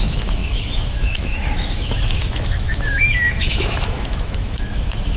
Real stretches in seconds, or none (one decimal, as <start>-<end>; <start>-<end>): none